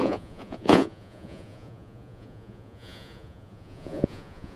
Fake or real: fake